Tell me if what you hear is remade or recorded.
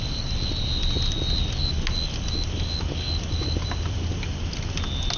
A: recorded